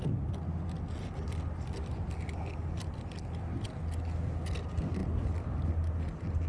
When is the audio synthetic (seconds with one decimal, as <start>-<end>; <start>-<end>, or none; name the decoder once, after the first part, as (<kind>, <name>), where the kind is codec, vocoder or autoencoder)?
none